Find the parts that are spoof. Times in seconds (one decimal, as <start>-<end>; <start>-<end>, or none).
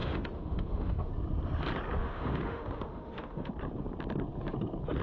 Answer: 0.0-1.1; 2.0-3.5